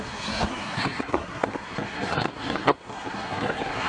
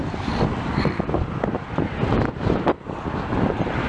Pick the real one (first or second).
second